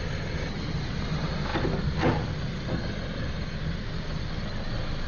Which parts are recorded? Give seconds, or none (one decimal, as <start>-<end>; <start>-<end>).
0.0-5.1